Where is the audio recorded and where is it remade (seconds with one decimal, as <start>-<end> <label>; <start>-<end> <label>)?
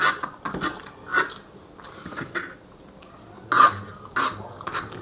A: 0.0-5.0 recorded